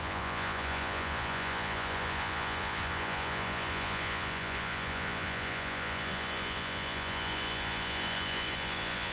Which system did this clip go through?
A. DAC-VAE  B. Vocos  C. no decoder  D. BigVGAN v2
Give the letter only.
B